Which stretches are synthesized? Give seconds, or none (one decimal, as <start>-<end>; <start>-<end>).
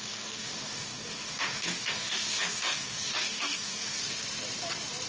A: 0.0-4.0